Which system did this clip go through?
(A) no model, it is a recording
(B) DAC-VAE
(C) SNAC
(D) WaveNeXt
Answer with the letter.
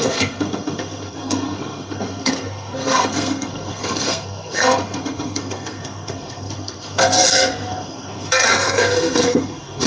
C